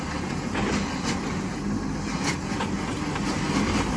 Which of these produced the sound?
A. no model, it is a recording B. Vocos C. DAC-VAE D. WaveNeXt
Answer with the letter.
A